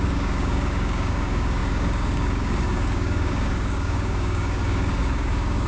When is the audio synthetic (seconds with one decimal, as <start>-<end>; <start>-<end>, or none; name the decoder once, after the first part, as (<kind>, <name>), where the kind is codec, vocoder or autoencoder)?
0.0-5.7 (codec, DAC)